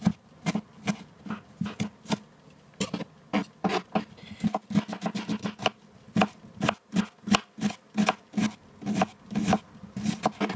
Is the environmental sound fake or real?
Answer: real